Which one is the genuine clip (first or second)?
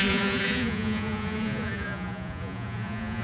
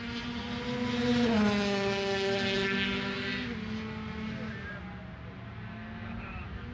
second